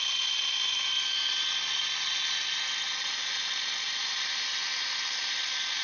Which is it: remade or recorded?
recorded